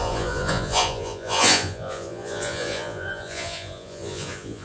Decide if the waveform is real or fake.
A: fake